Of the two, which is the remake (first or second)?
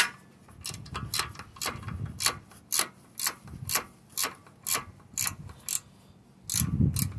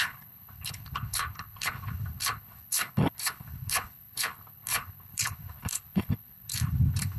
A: second